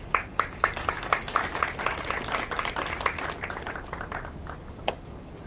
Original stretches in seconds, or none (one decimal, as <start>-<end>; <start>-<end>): 1.4-4.6